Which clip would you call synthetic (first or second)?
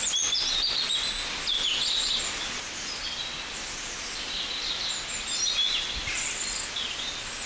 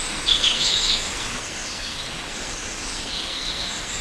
second